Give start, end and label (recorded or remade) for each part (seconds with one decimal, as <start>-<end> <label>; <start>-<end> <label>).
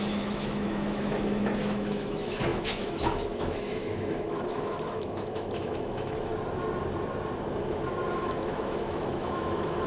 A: 0.0-6.3 remade; 6.3-8.1 recorded; 8.1-9.9 remade